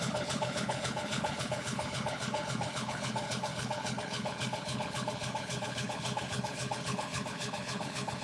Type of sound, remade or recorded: remade